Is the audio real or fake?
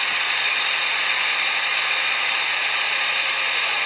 real